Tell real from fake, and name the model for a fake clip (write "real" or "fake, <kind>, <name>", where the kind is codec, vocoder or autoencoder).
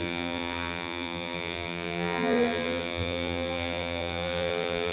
fake, vocoder, BigVGAN v2